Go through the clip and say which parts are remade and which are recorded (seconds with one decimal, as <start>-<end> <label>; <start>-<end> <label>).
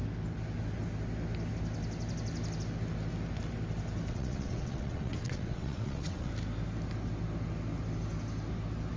0.0-4.1 recorded; 4.1-6.3 remade; 6.3-9.0 recorded